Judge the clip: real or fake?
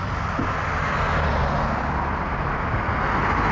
real